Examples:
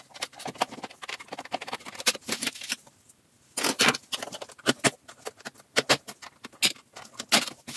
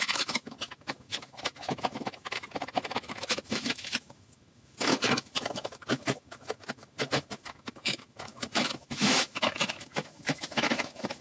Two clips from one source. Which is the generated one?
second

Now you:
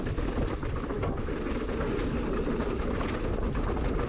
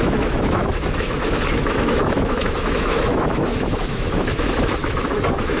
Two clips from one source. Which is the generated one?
second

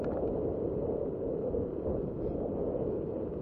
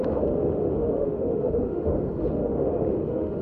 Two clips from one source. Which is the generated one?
second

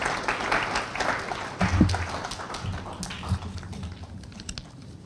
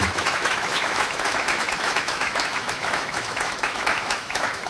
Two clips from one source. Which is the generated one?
second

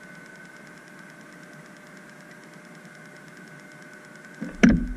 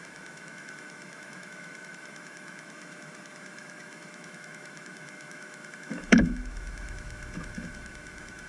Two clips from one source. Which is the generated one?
second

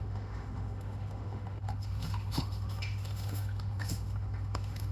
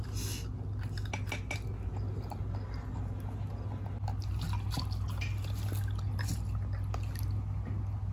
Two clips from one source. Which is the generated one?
first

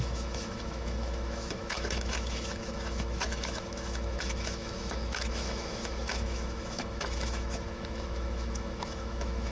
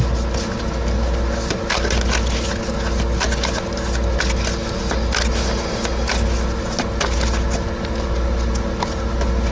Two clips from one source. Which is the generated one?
first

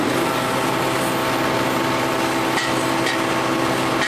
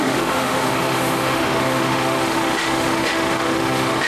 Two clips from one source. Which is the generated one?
second